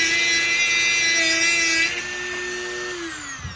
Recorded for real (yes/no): yes